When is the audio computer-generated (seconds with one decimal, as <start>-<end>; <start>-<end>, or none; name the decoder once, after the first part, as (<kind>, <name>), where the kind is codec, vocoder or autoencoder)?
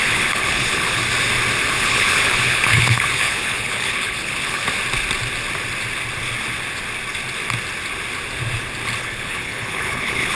0.0-1.0 (codec, HILCodec); 1.7-4.6; 9.0-10.4